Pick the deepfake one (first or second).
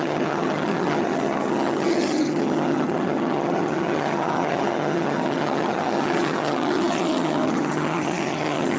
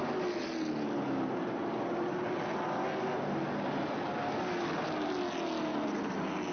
first